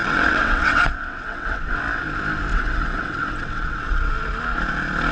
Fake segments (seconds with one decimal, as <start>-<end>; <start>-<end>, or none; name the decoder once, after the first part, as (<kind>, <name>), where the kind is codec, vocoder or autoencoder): 0.0-1.8 (vocoder, WaveNeXt); 2.5-4.1